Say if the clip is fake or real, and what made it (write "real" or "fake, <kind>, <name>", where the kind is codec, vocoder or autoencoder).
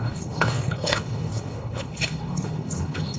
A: fake, codec, HILCodec